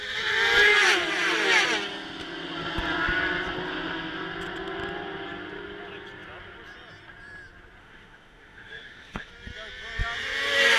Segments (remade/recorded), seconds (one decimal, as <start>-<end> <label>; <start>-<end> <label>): 0.0-7.8 recorded; 7.8-9.3 remade; 9.3-10.8 recorded